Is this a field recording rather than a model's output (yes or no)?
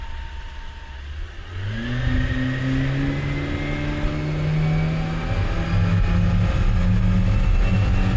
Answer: yes